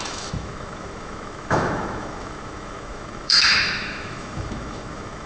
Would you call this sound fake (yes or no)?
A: yes